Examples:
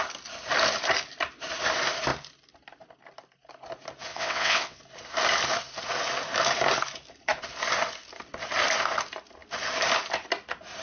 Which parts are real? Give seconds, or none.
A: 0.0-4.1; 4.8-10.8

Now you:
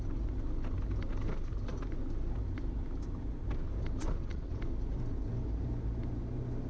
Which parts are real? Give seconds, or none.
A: 0.0-4.0; 4.6-6.7

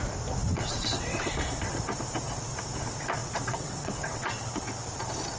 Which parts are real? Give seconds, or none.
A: 0.0-0.5; 1.3-3.2; 4.7-5.4